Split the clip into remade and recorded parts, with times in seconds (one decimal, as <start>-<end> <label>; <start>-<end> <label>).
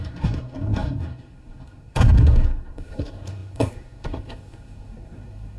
0.0-5.6 remade